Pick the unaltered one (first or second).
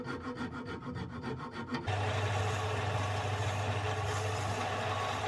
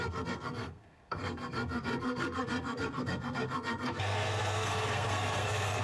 first